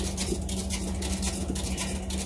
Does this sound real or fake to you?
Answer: real